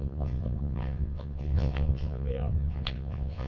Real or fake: fake